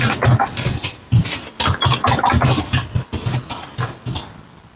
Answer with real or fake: real